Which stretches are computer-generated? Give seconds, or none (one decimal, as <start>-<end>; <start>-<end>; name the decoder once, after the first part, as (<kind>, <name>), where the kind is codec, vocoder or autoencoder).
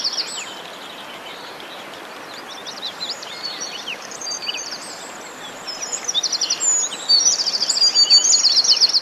2.6-4.7 (vocoder, BigVGAN v2)